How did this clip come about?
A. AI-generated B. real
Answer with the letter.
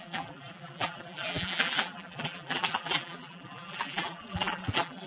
A